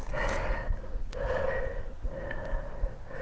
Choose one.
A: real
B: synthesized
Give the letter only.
A